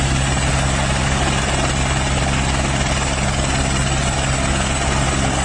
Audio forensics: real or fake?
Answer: real